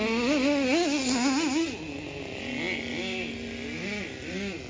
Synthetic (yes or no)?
no